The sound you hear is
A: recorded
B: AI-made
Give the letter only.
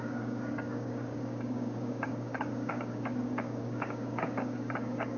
B